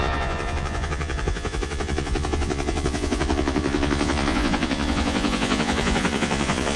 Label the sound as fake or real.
fake